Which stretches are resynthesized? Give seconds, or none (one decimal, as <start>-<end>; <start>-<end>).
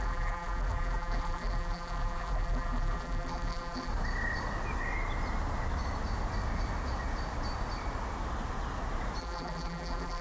0.0-3.9; 9.2-10.2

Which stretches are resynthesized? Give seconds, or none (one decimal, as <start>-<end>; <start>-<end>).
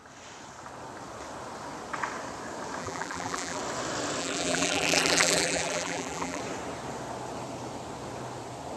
2.8-3.6; 4.2-6.4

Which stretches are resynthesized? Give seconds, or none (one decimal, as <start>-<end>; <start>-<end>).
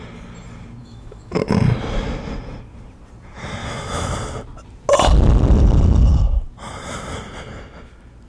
0.8-1.4; 3.6-4.1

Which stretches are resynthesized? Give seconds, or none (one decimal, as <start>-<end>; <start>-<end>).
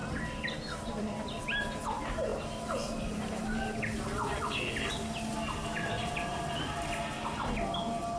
2.3-3.8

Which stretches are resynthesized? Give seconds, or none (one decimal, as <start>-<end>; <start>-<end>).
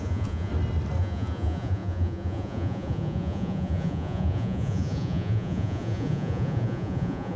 0.0-0.5; 1.0-7.4